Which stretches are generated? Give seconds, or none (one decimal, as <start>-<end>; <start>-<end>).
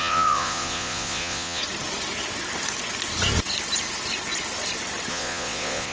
0.0-1.6; 5.1-5.9